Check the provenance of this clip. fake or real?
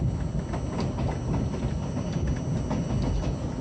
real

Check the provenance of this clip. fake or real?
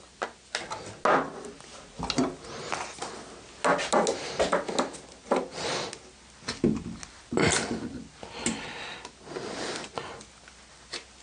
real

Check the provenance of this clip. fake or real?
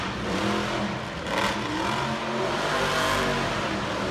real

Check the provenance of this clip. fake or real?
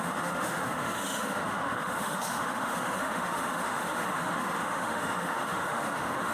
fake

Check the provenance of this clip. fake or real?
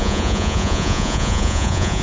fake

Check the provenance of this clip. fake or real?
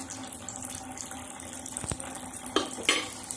real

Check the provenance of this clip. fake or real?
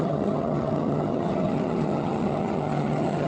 fake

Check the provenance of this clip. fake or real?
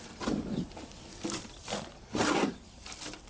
fake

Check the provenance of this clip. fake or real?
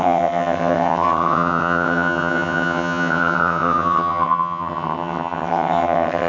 fake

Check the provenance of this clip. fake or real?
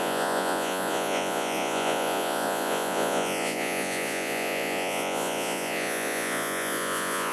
fake